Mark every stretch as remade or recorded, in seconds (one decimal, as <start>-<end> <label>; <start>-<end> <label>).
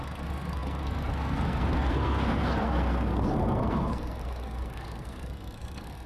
0.0-6.1 remade